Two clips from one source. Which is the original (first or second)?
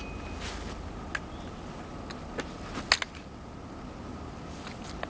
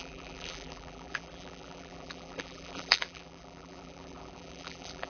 first